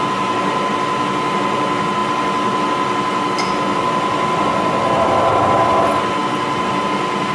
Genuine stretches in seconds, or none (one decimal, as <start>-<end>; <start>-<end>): 0.0-7.3